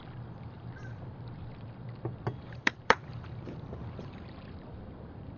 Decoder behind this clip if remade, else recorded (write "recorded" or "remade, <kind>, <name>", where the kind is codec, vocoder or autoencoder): remade, vocoder, BigVGAN v2